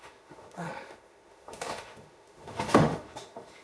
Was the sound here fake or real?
fake